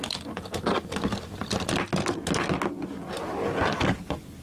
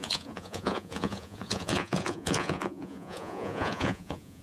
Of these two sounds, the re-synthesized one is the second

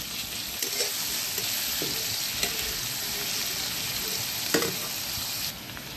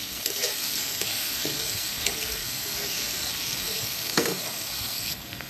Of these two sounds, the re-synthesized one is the second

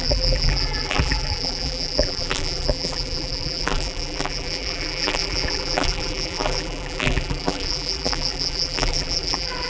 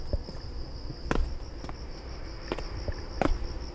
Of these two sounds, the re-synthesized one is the first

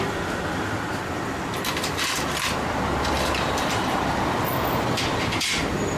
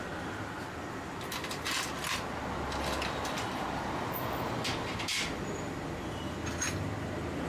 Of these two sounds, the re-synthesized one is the first